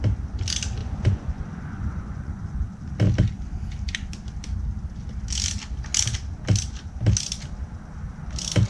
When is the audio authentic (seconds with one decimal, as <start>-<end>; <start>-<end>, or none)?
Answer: 0.0-0.8; 2.8-8.7